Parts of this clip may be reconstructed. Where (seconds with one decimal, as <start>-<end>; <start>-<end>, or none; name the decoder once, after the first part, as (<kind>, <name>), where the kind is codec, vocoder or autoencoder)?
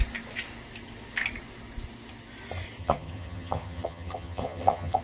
2.8-5.0 (vocoder, HiFi-GAN)